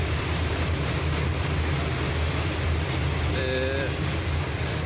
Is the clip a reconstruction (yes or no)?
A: yes